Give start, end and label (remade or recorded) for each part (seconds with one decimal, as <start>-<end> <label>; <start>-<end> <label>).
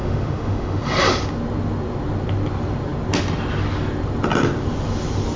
0.0-0.8 remade; 0.8-5.4 recorded